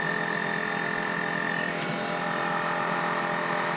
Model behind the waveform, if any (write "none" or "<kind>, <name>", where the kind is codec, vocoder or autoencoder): none